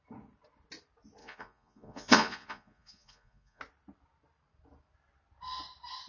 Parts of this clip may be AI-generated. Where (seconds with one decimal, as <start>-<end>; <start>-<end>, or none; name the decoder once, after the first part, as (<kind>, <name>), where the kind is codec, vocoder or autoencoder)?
1.2-3.6 (vocoder, Vocos)